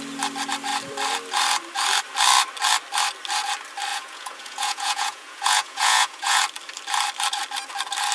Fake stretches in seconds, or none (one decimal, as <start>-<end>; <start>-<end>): 3.9-6.4